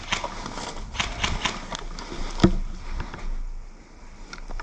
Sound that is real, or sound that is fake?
real